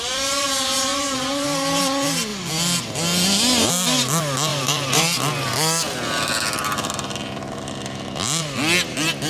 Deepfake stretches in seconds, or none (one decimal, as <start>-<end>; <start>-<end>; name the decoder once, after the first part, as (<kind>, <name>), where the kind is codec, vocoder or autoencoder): 0.9-1.8 (vocoder, BigVGAN v2); 4.5-5.0